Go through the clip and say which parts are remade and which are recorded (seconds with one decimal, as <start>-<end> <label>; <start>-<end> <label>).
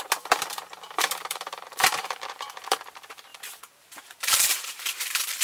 0.0-5.4 remade